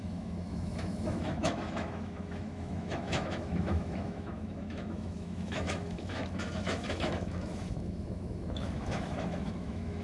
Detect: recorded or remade remade